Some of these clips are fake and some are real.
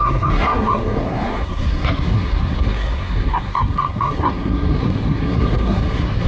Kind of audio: fake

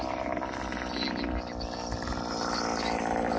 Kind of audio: real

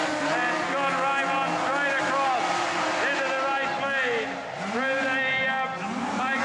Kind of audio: real